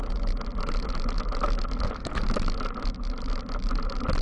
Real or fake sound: real